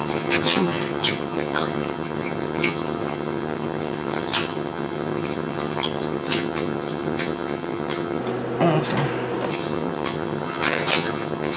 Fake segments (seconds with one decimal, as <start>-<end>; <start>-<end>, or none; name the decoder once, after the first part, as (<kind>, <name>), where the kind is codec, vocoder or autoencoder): 0.0-8.2 (vocoder, HiFi-GAN); 9.5-11.6